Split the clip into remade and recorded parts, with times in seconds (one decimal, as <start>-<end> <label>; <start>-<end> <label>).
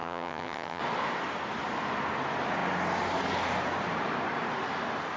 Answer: 0.0-0.8 remade; 0.8-5.2 recorded